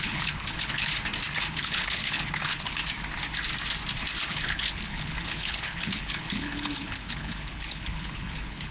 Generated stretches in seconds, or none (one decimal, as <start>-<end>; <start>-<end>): 0.0-0.9; 1.5-2.8; 4.3-8.7